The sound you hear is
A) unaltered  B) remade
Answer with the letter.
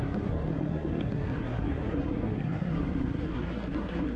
B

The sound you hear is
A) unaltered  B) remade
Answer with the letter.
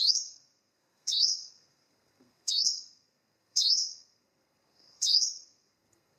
B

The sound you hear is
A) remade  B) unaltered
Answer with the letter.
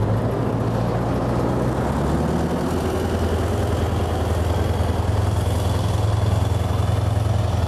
B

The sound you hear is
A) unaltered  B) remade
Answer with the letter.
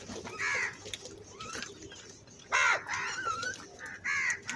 A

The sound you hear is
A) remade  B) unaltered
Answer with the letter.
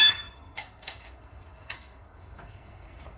A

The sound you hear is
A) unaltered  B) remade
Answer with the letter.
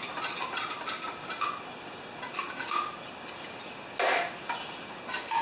A